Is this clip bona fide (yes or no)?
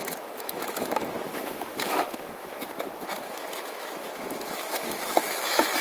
no